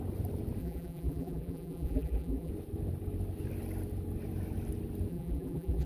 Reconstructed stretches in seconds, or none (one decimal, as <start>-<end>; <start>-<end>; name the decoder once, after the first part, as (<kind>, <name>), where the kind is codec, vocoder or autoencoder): 0.6-2.5 (vocoder, BigVGAN v2); 5.1-5.9